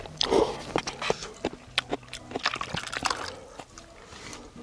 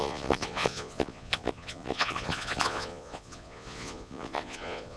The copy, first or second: second